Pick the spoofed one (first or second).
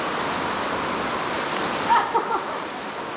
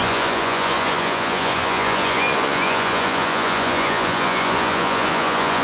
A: second